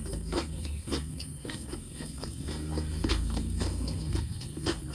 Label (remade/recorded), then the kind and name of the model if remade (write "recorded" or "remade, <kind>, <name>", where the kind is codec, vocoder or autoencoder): remade, codec, SNAC